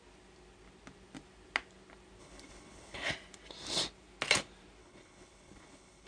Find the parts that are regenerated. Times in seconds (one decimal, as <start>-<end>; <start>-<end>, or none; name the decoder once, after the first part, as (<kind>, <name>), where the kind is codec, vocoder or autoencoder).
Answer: 2.2-3.1 (codec, HILCodec); 4.8-6.1